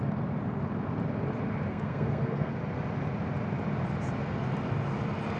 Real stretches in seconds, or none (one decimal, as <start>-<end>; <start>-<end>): 0.0-1.7; 2.5-5.4